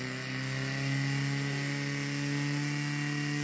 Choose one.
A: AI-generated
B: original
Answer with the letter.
B